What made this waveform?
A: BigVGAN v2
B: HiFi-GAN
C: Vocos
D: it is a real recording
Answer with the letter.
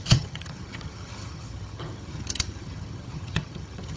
B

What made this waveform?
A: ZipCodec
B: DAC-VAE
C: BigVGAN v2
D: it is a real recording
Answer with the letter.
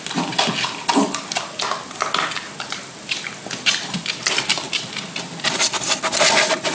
D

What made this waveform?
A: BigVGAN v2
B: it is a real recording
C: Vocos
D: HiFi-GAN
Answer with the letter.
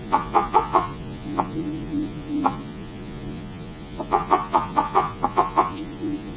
C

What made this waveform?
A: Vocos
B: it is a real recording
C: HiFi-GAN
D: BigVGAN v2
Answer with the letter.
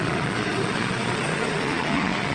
A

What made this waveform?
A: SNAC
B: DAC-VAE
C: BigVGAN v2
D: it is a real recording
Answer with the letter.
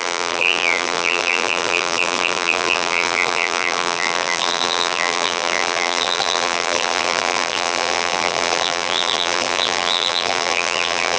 C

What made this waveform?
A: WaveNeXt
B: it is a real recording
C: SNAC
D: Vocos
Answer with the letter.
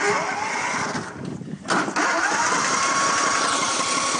B